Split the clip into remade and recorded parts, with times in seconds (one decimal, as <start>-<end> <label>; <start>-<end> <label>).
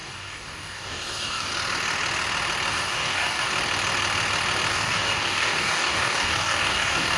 0.0-1.5 remade; 1.5-2.7 recorded; 2.7-3.5 remade; 3.5-4.7 recorded; 4.7-7.2 remade